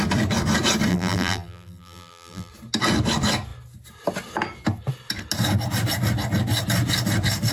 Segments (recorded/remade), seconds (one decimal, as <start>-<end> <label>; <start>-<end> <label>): 0.0-0.9 recorded; 0.9-2.5 remade; 2.5-7.5 recorded